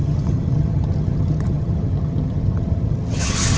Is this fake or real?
fake